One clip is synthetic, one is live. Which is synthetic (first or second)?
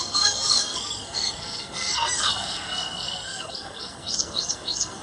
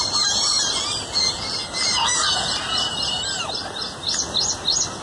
first